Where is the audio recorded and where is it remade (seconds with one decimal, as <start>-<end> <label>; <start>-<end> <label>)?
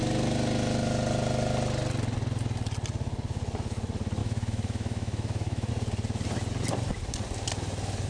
0.0-4.2 recorded; 4.2-5.7 remade; 5.7-8.1 recorded